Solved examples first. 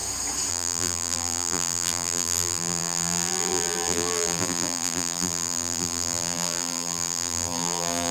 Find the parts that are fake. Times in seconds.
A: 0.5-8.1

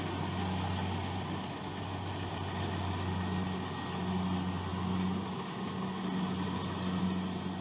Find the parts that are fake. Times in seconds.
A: none

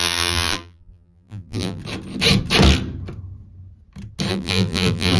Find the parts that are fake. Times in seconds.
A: 0.0-1.8; 4.3-5.2